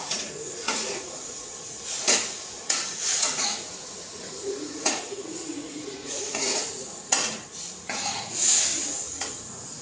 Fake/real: fake